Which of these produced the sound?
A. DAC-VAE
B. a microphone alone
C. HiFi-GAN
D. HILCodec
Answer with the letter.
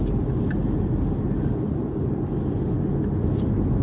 B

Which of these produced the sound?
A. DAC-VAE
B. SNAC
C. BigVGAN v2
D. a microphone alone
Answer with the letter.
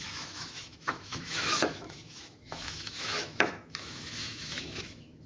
A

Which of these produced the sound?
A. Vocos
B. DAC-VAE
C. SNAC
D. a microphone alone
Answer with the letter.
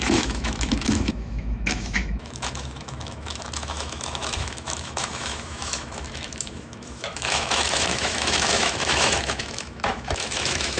B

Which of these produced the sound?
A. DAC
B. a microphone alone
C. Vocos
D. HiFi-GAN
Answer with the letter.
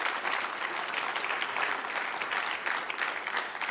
B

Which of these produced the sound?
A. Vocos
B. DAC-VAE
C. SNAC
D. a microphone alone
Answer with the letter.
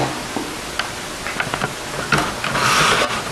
D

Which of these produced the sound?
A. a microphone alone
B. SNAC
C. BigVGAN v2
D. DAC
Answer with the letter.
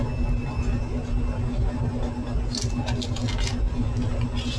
A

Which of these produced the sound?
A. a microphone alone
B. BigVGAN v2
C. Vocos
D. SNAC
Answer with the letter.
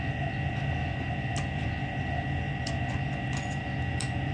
A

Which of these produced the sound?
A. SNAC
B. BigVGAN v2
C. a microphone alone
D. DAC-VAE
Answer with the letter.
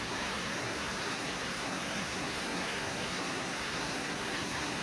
A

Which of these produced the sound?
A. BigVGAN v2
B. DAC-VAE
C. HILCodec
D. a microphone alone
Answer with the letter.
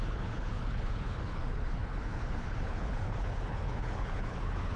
C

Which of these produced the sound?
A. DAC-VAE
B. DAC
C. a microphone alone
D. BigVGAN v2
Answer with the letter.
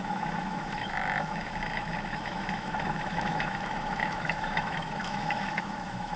A